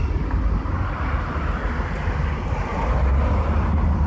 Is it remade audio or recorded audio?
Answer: recorded